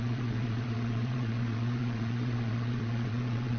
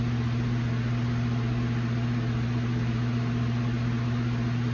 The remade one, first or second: first